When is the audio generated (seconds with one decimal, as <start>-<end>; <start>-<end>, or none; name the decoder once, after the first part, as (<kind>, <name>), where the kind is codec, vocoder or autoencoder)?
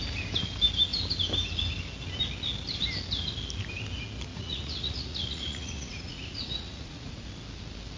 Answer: 4.3-7.3 (vocoder, Vocos)